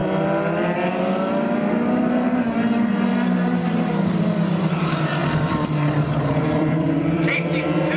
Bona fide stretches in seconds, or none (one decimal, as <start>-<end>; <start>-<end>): 2.3-3.1; 4.7-5.2